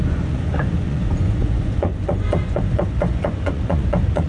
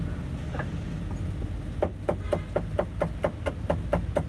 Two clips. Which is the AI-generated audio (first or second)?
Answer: first